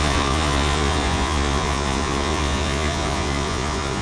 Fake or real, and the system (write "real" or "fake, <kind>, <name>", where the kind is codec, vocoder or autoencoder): fake, vocoder, Vocos